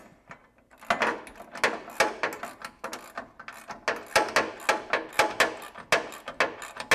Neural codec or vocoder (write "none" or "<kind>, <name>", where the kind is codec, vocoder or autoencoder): none